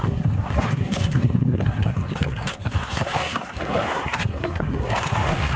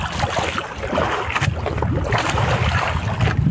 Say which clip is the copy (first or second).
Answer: first